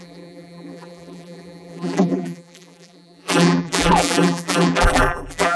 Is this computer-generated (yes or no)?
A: yes